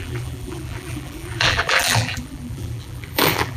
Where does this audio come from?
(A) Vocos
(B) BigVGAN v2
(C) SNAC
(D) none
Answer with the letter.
B